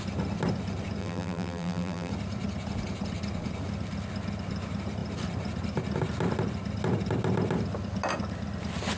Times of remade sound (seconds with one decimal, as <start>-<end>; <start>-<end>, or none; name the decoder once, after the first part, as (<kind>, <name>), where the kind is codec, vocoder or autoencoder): 1.0-2.1 (vocoder, BigVGAN v2)